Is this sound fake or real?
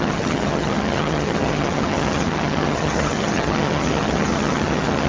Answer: fake